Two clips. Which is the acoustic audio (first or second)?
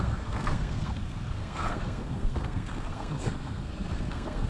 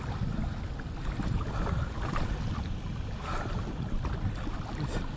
second